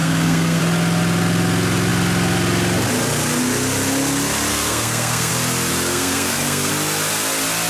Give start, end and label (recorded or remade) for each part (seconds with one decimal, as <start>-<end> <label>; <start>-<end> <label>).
0.0-0.6 remade; 0.6-4.5 recorded; 4.5-5.3 remade; 5.3-5.7 recorded; 5.7-6.7 remade; 6.7-7.7 recorded